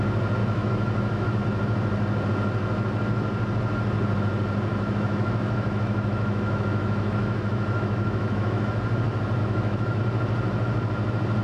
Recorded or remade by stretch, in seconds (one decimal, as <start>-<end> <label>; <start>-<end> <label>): 0.0-0.4 recorded; 0.4-1.4 remade; 1.4-4.7 recorded; 4.7-8.7 remade; 8.7-9.4 recorded; 9.4-10.0 remade; 10.0-11.4 recorded